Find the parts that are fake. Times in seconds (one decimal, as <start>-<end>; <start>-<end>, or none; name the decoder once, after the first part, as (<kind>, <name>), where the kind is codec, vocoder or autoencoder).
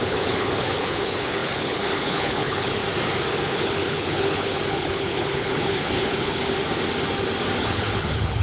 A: 0.0-2.8 (codec, HILCodec); 3.5-6.4; 7.6-8.4